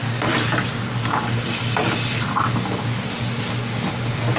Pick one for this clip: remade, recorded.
recorded